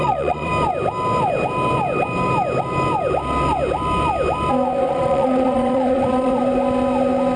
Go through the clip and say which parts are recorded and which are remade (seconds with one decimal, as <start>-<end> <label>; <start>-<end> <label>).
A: 0.0-0.5 remade; 0.5-4.9 recorded; 4.9-6.4 remade; 6.4-7.4 recorded